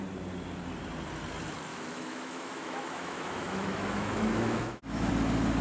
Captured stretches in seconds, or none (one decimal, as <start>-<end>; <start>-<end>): 0.0-1.7; 5.1-5.6